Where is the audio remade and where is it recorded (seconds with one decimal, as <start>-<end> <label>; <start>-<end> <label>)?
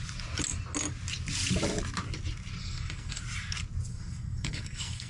0.0-2.6 recorded; 2.6-3.2 remade; 3.2-3.9 recorded; 3.9-5.1 remade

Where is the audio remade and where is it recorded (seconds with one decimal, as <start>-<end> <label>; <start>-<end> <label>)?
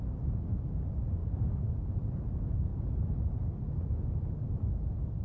0.0-5.2 recorded